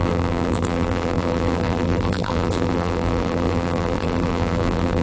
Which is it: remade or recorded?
remade